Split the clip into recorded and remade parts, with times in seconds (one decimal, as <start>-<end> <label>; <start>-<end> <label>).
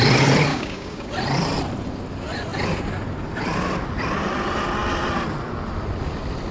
0.0-0.5 recorded; 0.5-1.1 remade; 1.1-6.5 recorded